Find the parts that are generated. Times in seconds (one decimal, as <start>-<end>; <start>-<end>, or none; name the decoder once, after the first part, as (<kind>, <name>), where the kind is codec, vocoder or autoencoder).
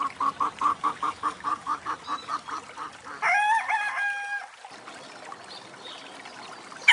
0.7-1.8 (codec, DAC)